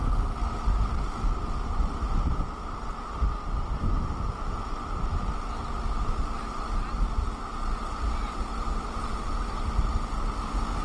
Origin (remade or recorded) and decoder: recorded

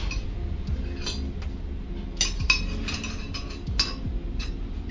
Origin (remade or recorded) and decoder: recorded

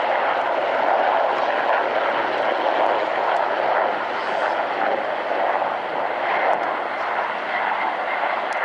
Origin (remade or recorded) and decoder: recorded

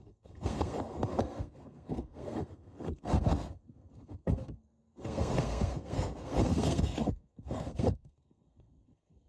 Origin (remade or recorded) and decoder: remade, codec, SNAC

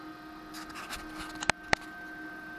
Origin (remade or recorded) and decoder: recorded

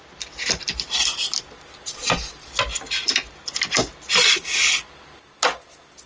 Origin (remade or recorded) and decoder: recorded